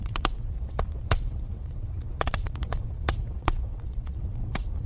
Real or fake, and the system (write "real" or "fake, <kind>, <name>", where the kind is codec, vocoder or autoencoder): fake, vocoder, WaveNeXt